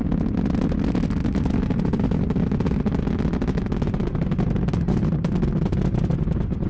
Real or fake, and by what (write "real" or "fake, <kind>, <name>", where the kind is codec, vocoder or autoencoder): real